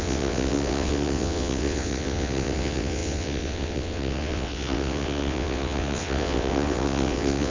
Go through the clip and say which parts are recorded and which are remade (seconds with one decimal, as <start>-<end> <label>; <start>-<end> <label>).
0.0-7.5 remade